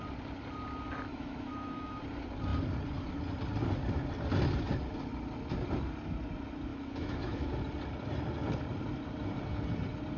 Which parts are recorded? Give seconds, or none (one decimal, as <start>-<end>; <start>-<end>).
0.0-1.1; 2.0-6.7; 7.5-10.2